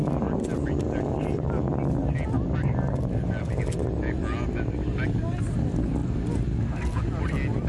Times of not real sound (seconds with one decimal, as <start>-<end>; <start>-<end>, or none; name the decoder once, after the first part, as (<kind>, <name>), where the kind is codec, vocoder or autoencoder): none